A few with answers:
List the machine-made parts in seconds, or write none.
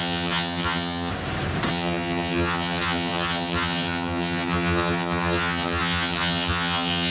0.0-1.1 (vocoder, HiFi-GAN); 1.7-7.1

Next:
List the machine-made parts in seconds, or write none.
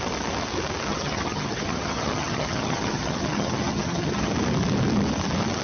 0.9-4.3 (vocoder, HiFi-GAN)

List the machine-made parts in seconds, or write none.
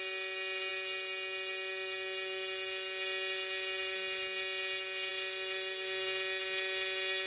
none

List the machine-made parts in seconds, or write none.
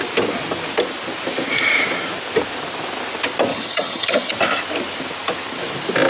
3.5-4.3 (vocoder, HiFi-GAN)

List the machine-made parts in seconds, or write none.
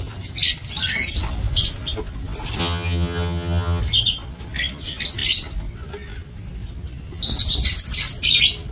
2.6-3.8 (vocoder, HiFi-GAN)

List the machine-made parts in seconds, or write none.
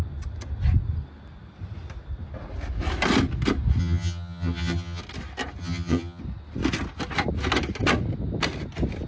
3.8-5.0 (vocoder, HiFi-GAN); 5.6-6.2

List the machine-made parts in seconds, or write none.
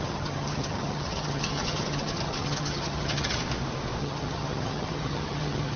0.0-3.4 (vocoder, HiFi-GAN); 4.0-5.8